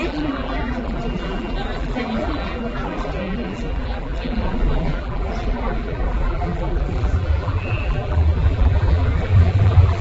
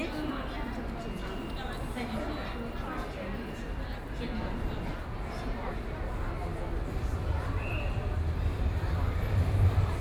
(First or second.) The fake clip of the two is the first